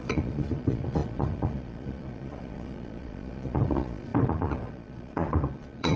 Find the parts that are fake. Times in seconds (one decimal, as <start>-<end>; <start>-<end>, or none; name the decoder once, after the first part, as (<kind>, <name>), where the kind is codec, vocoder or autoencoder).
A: 0.0-6.0 (vocoder, Vocos)